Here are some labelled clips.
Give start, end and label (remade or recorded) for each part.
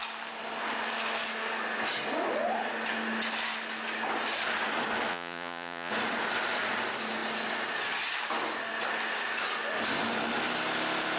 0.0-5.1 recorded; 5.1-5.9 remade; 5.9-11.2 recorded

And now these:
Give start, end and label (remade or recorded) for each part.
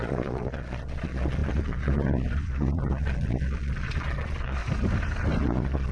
0.0-4.6 remade; 4.6-5.4 recorded; 5.4-5.9 remade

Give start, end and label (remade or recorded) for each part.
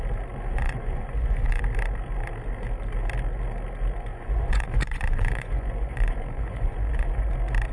0.0-0.5 recorded; 0.5-1.6 remade; 1.6-4.1 recorded; 4.1-7.3 remade; 7.3-7.7 recorded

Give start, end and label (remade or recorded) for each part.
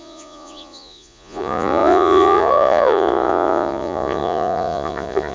0.0-5.3 remade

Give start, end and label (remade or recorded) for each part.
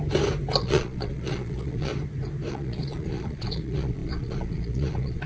0.0-0.6 recorded; 0.6-1.9 remade; 1.9-2.5 recorded; 2.5-5.3 remade